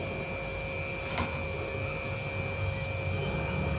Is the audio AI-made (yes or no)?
no